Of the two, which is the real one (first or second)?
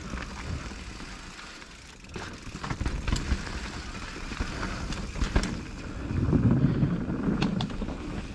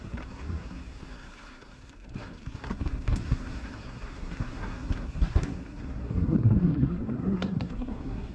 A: first